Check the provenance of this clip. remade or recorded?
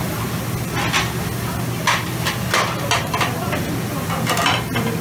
recorded